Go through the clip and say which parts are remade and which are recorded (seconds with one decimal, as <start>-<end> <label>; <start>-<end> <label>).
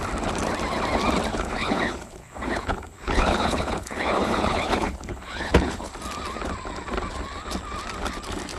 0.0-1.3 recorded; 1.3-5.9 remade; 5.9-8.6 recorded